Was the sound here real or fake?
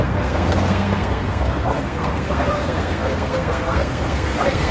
fake